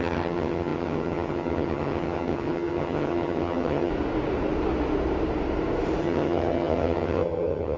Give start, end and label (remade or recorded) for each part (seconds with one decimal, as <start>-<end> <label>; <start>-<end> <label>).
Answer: 0.0-3.9 remade; 3.9-6.0 recorded; 6.0-7.8 remade